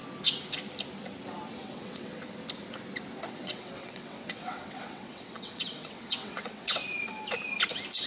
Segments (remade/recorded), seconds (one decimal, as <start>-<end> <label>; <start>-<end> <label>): 0.0-1.6 recorded; 1.6-2.2 remade; 2.2-3.3 recorded; 3.3-6.8 remade; 6.8-8.1 recorded

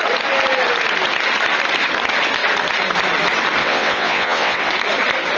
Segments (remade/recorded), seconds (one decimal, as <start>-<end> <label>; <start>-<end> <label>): 0.0-3.6 recorded; 3.6-4.7 remade; 4.7-5.4 recorded

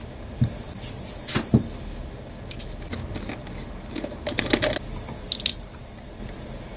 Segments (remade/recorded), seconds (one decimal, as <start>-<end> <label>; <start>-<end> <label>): 0.0-6.8 recorded

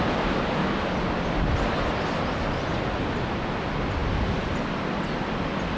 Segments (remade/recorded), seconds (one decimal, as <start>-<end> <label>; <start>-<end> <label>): 0.0-5.8 recorded

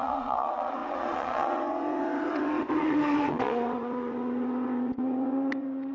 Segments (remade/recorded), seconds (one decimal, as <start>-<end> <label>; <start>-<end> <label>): 0.0-5.9 remade

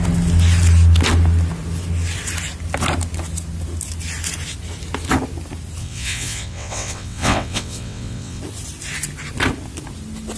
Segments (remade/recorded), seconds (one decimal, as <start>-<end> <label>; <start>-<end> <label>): 0.0-5.8 recorded; 5.8-8.4 remade; 8.4-10.4 recorded